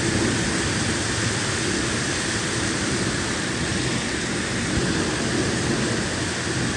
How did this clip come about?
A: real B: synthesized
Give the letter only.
A